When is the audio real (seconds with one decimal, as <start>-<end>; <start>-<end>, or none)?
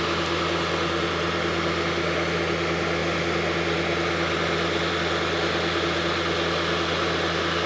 0.0-7.7